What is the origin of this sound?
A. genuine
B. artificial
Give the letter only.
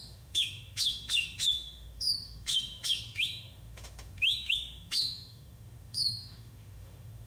B